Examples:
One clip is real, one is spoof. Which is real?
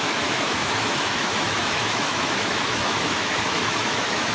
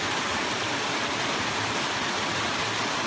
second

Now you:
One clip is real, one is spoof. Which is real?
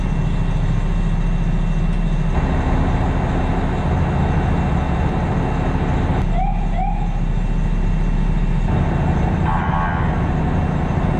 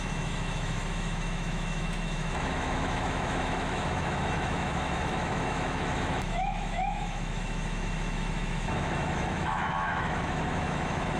first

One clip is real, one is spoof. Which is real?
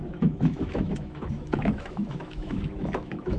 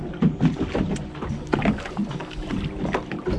second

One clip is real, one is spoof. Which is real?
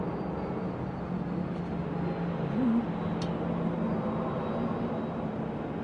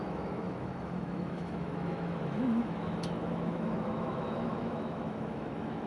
first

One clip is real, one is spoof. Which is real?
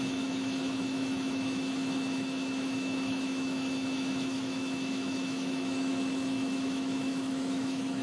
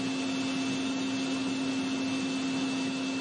second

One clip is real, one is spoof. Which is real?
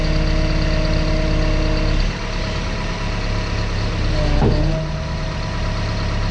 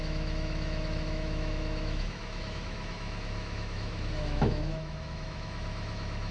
first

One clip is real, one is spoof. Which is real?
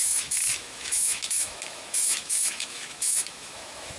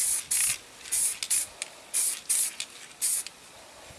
second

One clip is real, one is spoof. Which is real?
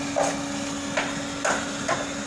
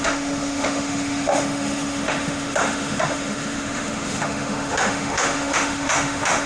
first